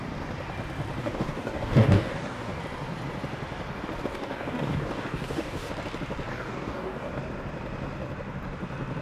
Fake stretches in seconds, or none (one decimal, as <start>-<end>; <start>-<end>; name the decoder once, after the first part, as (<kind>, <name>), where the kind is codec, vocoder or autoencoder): 1.0-2.6 (codec, DAC); 4.1-5.7; 6.3-7.1